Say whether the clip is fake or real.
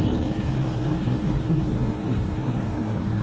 fake